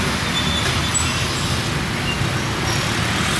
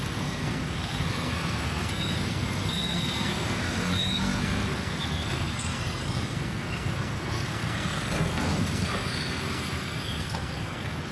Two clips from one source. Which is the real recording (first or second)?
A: first